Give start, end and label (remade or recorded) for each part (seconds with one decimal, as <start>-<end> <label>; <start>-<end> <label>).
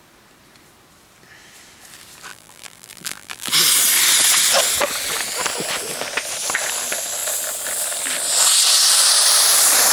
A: 0.0-2.3 recorded; 2.3-3.5 remade; 3.5-9.9 recorded